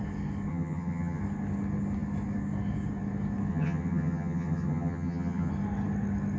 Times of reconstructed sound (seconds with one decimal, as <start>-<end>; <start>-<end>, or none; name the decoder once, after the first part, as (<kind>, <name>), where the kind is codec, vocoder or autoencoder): 0.5-1.2 (vocoder, HiFi-GAN); 3.5-5.5